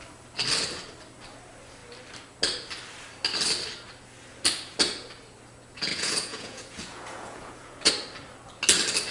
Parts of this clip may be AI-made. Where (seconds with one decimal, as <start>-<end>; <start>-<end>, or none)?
5.9-7.9